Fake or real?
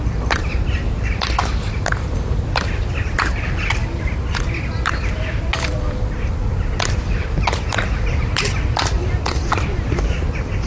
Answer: real